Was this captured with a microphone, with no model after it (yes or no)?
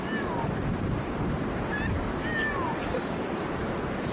yes